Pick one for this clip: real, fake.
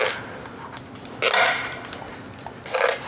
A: real